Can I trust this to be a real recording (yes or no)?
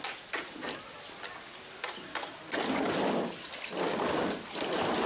yes